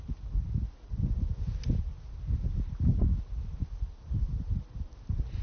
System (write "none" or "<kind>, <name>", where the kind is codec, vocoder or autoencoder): none